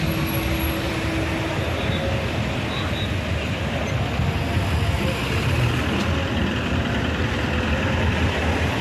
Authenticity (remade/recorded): recorded